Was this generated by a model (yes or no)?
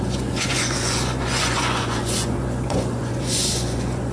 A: yes